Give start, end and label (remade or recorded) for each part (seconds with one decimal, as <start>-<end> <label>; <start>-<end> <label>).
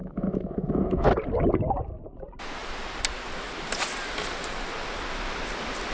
0.0-1.1 remade; 1.1-5.9 recorded